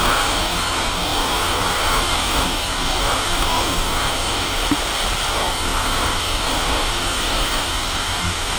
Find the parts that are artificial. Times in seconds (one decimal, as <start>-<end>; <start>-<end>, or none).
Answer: 0.0-4.6; 5.3-8.6